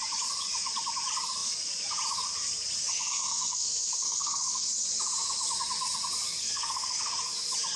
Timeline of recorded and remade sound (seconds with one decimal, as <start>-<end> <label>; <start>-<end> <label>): 0.0-2.8 recorded; 2.8-4.7 remade; 4.7-6.4 recorded; 6.4-7.0 remade; 7.0-7.8 recorded